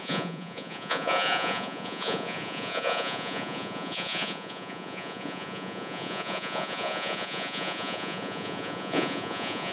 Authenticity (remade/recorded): remade